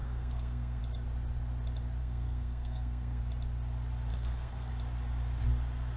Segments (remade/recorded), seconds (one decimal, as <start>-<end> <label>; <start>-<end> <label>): 0.0-0.8 remade; 0.8-2.0 recorded; 2.0-3.2 remade; 3.2-4.1 recorded; 4.1-4.7 remade; 4.7-6.0 recorded